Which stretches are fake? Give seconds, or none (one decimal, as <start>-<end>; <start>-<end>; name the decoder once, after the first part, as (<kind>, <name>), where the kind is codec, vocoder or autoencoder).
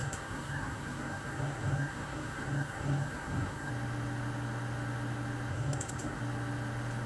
0.0-3.7 (codec, SNAC); 5.5-6.2